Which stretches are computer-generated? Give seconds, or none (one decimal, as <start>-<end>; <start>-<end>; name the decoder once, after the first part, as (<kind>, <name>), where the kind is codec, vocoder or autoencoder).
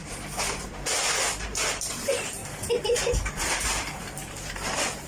0.0-2.4 (vocoder, BigVGAN v2); 3.3-5.1